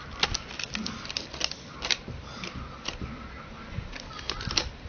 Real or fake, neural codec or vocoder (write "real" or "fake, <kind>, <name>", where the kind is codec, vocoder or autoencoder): real